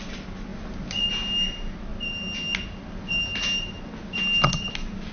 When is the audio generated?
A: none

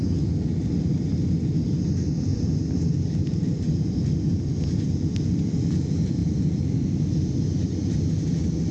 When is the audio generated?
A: 2.3-3.8 (vocoder, BigVGAN v2); 4.3-5.3; 6.2-7.1

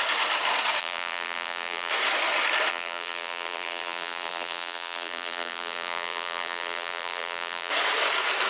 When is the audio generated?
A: 0.8-1.9 (vocoder, BigVGAN v2); 2.7-7.7

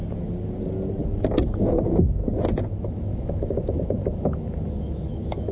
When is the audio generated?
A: 1.0-2.2 (autoencoder, DAC-VAE); 2.7-5.5

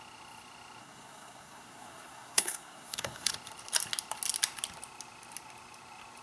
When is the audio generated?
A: 0.8-3.3 (codec, SNAC)